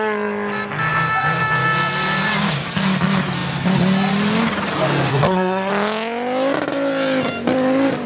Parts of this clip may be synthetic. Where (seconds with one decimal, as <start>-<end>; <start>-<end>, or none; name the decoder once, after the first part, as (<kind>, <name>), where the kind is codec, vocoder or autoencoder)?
5.1-5.7 (codec, SNAC)